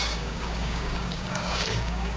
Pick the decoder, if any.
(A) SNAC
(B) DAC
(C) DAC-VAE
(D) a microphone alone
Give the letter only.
B